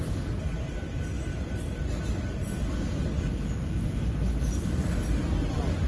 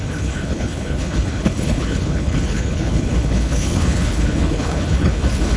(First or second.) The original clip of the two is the first